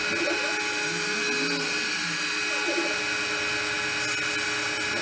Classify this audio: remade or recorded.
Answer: recorded